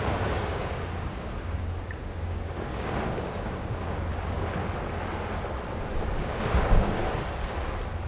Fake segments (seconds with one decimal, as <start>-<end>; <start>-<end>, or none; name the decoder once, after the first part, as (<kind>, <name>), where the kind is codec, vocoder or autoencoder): 0.0-4.1 (codec, DAC); 6.2-7.0